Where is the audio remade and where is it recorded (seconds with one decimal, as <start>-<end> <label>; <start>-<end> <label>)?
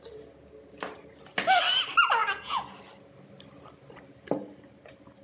0.0-2.2 recorded; 2.2-2.8 remade; 2.8-5.2 recorded